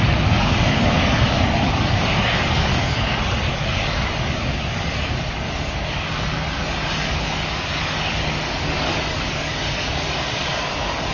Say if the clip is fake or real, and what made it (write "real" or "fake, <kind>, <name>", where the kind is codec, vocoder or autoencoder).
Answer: fake, codec, DAC